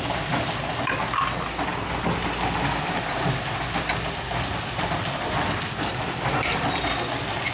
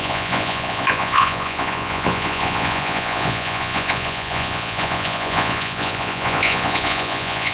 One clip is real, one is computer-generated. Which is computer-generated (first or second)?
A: second